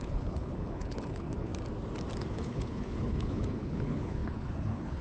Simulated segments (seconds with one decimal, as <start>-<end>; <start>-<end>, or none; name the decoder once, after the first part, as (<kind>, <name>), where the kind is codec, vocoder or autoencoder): 0.0-1.5 (codec, HILCodec); 2.3-5.0